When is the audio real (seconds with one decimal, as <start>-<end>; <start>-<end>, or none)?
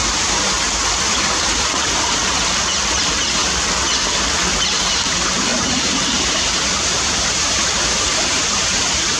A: 2.2-3.0; 3.4-4.8